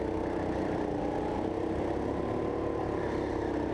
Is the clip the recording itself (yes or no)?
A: yes